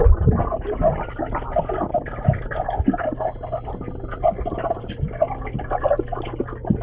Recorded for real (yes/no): yes